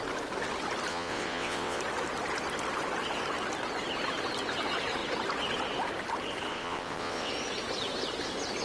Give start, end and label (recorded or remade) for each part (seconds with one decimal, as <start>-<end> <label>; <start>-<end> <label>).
0.0-0.9 recorded; 0.9-1.8 remade; 1.8-6.5 recorded; 6.5-7.3 remade; 7.3-8.6 recorded